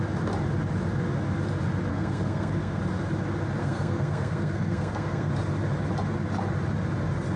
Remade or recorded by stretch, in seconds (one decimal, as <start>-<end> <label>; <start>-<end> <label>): 0.0-1.9 recorded; 1.9-2.8 remade; 2.8-3.6 recorded; 3.6-5.3 remade; 5.3-7.4 recorded